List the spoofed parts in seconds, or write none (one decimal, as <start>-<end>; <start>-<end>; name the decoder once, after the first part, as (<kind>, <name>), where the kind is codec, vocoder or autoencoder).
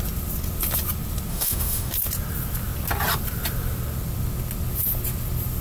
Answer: 1.3-1.9 (autoencoder, DAC-VAE)